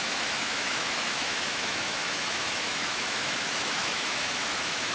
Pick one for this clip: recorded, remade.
remade